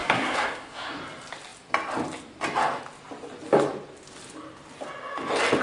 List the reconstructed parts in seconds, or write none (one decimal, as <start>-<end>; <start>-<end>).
0.0-1.0